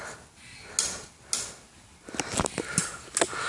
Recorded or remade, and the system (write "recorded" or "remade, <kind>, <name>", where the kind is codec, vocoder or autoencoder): recorded